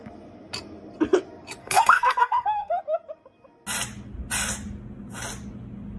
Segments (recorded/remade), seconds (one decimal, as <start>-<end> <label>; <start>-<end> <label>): 0.0-1.6 recorded; 1.6-2.8 remade; 2.8-6.0 recorded